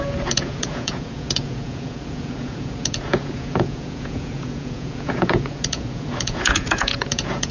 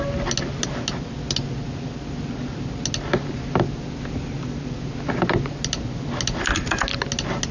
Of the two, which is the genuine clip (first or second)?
second